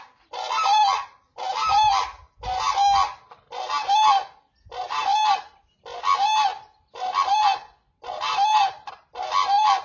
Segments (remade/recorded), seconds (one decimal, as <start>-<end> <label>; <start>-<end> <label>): 0.0-9.8 recorded